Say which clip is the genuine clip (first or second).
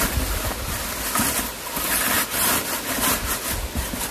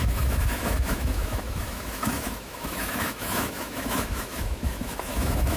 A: first